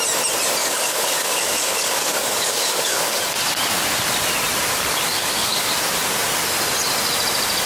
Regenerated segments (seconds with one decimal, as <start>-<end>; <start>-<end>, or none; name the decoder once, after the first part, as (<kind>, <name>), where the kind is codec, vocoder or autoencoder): 0.6-3.2 (codec, DAC); 5.1-5.7